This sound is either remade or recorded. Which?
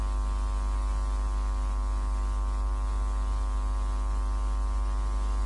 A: recorded